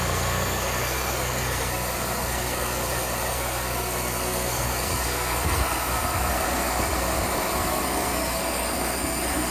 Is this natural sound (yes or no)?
no